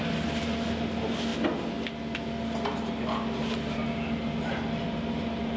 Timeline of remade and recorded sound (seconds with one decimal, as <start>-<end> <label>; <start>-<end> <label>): 0.0-5.6 recorded